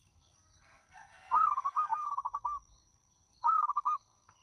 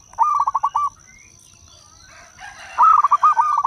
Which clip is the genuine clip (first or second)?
second